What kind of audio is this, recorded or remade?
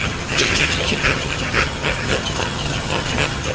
remade